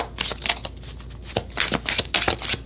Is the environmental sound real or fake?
real